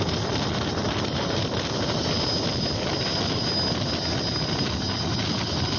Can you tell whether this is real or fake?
real